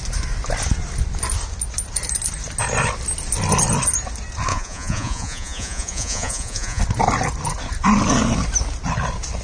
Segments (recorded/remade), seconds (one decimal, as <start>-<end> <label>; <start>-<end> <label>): 0.0-4.5 recorded; 4.5-6.8 remade; 6.8-9.4 recorded